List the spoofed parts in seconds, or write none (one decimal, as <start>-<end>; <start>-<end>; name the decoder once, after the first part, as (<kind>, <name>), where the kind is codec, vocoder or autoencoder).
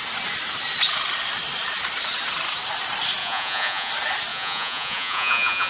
3.2-3.9 (vocoder, Vocos); 4.3-5.7